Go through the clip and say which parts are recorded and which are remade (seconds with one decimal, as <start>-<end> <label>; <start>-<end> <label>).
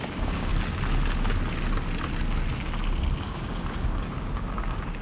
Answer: 0.0-0.5 remade; 0.5-3.2 recorded; 3.2-5.0 remade